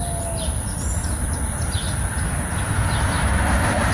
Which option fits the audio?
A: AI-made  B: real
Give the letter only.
B